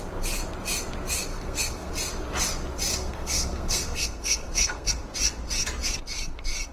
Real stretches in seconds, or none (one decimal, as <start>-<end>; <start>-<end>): 0.0-1.3; 1.9-2.9; 4.9-6.7